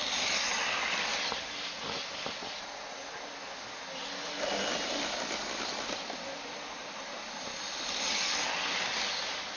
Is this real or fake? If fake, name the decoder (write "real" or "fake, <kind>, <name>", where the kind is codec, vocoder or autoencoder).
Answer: real